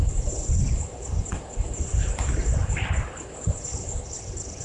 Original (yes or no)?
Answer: no